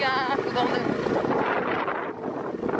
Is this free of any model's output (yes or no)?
yes